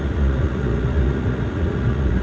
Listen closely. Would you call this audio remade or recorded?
remade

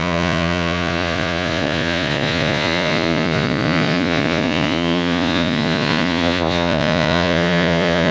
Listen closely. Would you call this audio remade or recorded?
remade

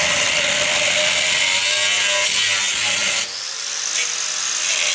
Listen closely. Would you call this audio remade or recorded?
recorded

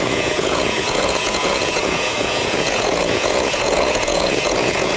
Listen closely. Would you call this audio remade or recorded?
remade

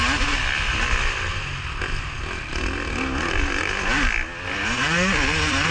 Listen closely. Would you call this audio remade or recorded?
recorded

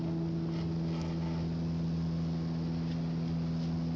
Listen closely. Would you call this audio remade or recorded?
recorded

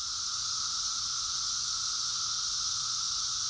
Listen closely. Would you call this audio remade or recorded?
remade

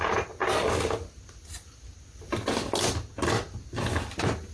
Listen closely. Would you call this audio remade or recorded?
recorded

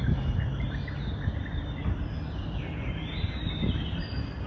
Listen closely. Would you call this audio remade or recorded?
recorded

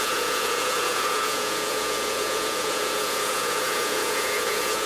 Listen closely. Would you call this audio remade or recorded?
remade